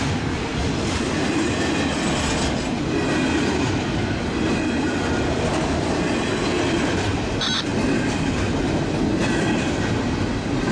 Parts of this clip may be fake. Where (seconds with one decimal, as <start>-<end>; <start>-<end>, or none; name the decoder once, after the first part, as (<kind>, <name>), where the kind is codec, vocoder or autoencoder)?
none

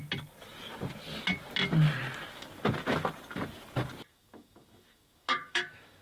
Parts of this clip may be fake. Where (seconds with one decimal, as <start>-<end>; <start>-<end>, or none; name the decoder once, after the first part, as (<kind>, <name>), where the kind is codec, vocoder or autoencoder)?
4.1-6.0 (autoencoder, DAC-VAE)

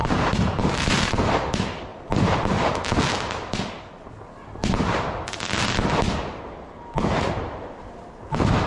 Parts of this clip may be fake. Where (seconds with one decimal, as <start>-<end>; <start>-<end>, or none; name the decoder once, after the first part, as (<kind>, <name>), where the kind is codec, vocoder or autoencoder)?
0.0-1.9 (vocoder, BigVGAN v2); 7.1-8.7

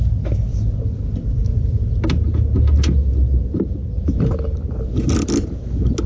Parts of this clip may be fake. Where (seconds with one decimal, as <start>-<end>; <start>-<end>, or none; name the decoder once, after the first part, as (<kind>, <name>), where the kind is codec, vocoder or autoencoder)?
none

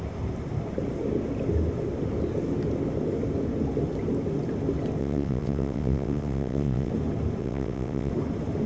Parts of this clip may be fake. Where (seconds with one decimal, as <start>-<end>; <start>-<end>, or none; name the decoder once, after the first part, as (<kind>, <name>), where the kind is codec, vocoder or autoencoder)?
5.0-6.9 (vocoder, WaveNeXt); 7.4-8.1